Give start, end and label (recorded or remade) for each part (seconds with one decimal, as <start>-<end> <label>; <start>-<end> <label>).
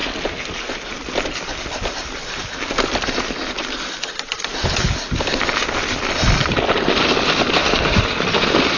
0.0-1.0 recorded; 1.0-2.9 remade; 2.9-7.6 recorded; 7.6-8.3 remade; 8.3-8.8 recorded